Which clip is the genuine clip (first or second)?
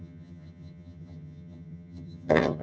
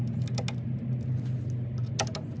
second